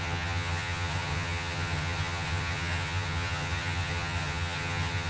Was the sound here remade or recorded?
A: remade